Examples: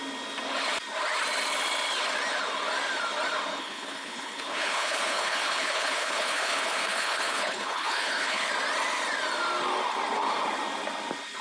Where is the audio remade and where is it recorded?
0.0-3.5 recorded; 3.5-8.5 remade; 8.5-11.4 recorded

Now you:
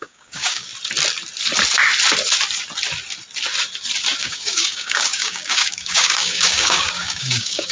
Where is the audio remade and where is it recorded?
0.0-0.7 remade; 0.7-4.2 recorded; 4.2-7.7 remade

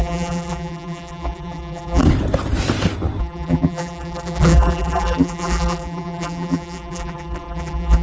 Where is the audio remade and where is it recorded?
0.0-2.0 remade; 2.0-3.2 recorded; 3.2-8.0 remade

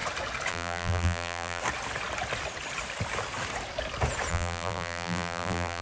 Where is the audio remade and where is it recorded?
0.0-0.5 recorded; 0.5-1.6 remade; 1.6-4.3 recorded; 4.3-5.8 remade

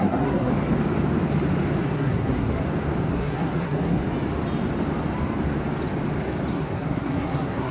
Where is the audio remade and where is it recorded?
0.0-0.5 remade; 0.5-1.8 recorded; 1.8-2.6 remade; 2.6-3.1 recorded; 3.1-4.0 remade; 4.0-6.5 recorded; 6.5-7.7 remade

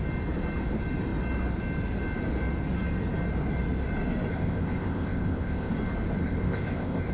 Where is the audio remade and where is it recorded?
0.0-4.3 recorded; 4.3-5.7 remade; 5.7-6.2 recorded; 6.2-7.1 remade